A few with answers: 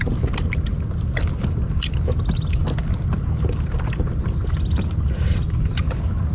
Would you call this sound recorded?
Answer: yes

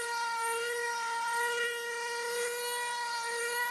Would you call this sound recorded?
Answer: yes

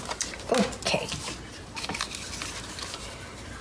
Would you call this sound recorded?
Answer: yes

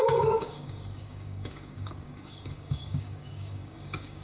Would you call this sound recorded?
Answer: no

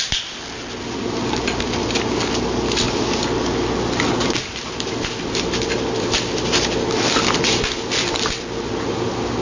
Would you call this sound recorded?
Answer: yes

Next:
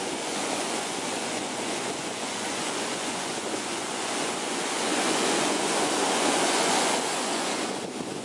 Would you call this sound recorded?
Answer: no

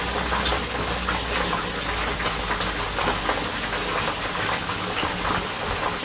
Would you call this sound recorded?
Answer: yes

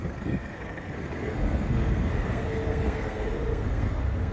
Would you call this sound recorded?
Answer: no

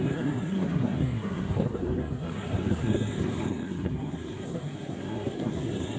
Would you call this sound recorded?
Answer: no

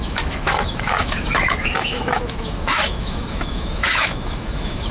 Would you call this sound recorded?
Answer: no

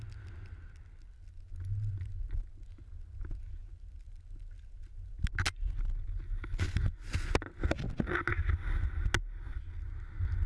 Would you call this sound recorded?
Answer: yes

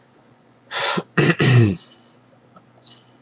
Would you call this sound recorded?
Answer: no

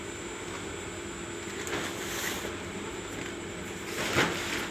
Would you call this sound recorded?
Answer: yes